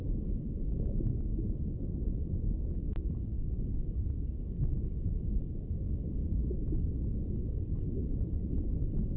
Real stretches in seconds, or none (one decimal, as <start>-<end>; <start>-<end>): 0.0-1.1; 3.6-9.2